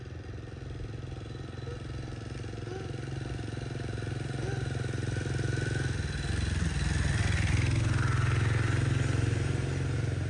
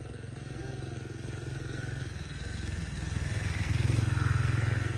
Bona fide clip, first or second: first